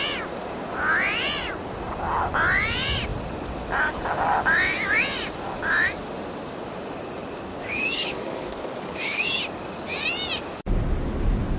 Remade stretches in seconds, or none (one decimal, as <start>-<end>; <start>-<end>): 7.5-9.4